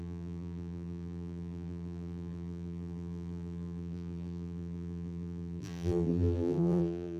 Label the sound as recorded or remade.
remade